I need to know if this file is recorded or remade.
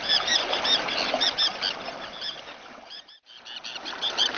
recorded